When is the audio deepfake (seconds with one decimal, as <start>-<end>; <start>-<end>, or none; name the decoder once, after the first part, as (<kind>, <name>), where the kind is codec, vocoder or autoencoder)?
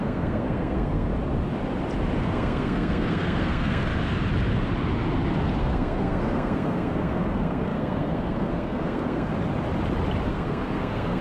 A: 0.0-1.1 (codec, SNAC); 2.2-3.9; 5.6-9.3; 10.3-11.2